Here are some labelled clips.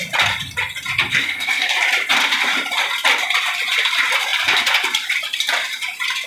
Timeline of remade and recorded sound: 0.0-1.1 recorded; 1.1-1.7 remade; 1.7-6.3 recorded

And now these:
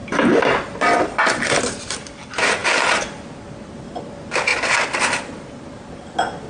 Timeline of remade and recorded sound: 0.0-6.5 recorded

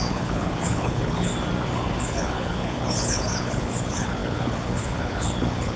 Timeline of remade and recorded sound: 0.0-1.3 remade; 1.3-2.0 recorded; 2.0-5.8 remade

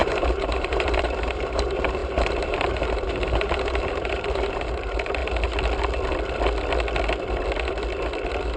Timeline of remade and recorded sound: 0.0-5.2 remade; 5.2-8.6 recorded

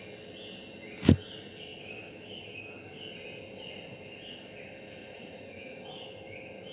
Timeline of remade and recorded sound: 0.0-5.0 recorded; 5.0-5.8 remade; 5.8-6.7 recorded

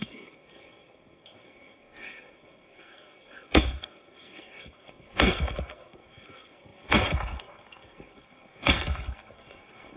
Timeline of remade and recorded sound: 0.0-10.0 remade